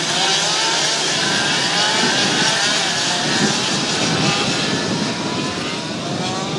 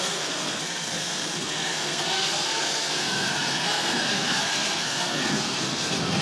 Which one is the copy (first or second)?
second